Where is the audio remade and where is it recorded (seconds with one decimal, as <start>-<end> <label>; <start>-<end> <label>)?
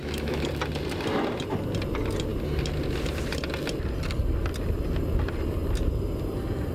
0.0-0.5 remade; 0.5-6.7 recorded